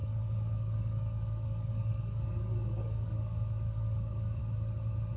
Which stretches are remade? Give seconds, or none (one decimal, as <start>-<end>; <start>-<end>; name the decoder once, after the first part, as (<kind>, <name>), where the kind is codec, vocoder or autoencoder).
0.0-4.4 (codec, DAC)